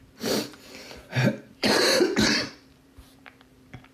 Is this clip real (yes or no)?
no